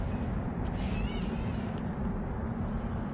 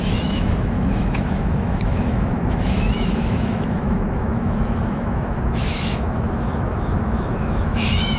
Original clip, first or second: first